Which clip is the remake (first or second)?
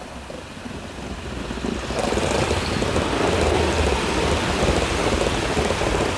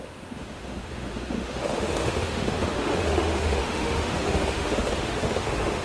second